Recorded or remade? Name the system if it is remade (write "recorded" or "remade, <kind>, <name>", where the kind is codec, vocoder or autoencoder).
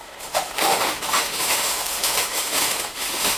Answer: remade, autoencoder, DAC-VAE